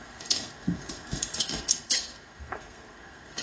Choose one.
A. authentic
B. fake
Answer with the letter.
B